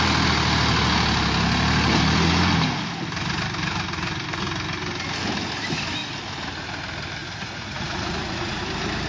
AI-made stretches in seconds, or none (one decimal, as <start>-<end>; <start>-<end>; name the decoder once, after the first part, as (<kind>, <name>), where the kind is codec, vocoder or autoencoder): 7.2-8.6 (vocoder, Vocos)